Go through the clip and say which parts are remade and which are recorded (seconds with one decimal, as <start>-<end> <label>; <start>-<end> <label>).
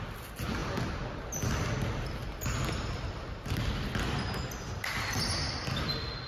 0.0-6.3 recorded